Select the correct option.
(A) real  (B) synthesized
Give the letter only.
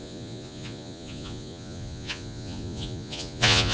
B